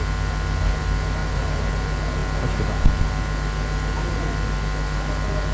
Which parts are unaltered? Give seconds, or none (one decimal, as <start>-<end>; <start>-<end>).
0.0-1.2; 1.7-5.5